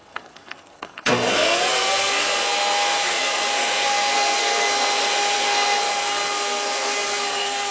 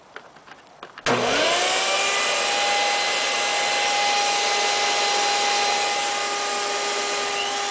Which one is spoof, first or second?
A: first